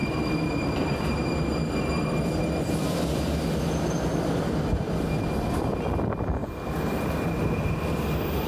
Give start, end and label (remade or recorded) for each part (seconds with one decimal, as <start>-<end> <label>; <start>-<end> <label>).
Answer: 0.0-4.5 remade; 4.5-6.4 recorded; 6.4-7.7 remade; 7.7-8.5 recorded